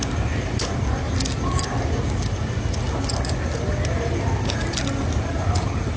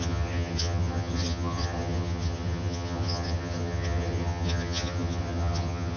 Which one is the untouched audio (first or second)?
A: first